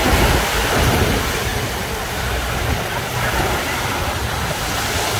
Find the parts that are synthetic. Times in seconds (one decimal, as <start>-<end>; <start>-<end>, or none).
1.5-4.6